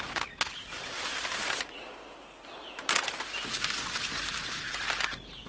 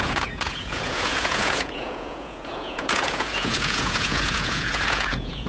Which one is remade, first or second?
second